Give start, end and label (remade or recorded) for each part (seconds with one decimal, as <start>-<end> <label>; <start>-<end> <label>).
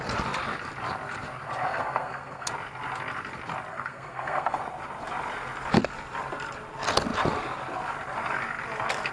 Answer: 0.0-1.6 recorded; 1.6-2.5 remade; 2.5-3.7 recorded; 3.7-4.6 remade; 4.6-9.1 recorded